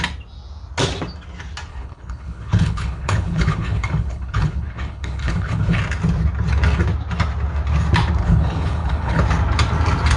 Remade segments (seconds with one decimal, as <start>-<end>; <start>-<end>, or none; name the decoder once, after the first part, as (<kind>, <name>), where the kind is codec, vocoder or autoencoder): 1.7-5.8 (codec, HILCodec); 8.2-9.2